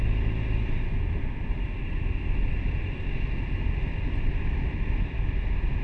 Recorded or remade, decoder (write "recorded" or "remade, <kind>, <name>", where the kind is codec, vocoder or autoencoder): recorded